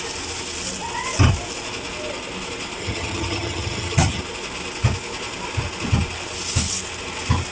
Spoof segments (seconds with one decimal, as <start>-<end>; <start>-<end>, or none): 2.8-4.2